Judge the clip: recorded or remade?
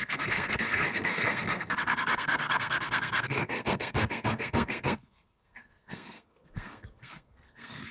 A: remade